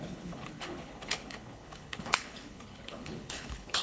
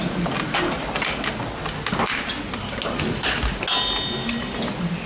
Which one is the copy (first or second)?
first